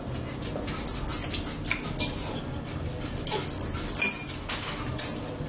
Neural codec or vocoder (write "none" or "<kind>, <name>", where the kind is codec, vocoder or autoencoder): none